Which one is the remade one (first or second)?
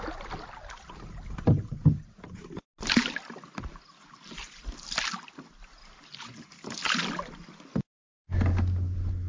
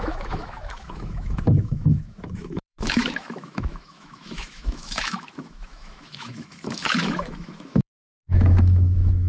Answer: second